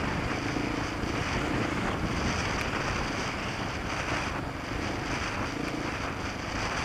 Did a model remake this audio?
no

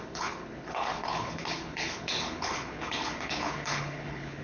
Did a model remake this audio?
yes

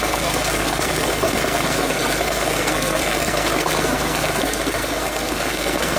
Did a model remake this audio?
yes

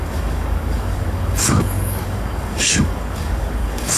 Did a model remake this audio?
yes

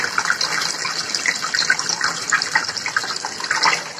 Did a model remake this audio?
no